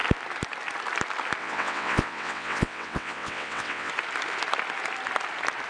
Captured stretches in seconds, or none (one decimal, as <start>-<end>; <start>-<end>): 0.0-1.4; 3.9-5.7